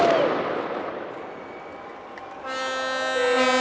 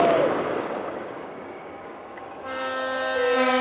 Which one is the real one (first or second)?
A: first